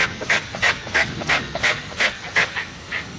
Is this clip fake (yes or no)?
yes